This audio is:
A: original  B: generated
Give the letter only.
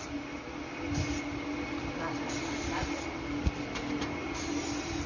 A